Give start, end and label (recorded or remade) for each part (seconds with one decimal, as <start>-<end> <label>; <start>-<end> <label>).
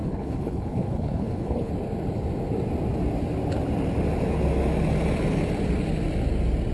0.0-1.7 remade; 1.7-6.7 recorded